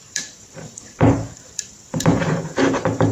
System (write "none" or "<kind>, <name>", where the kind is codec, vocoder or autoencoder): vocoder, BigVGAN v2